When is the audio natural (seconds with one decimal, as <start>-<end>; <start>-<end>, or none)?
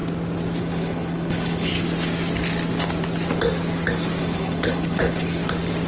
0.0-0.6; 1.7-4.2; 5.4-5.9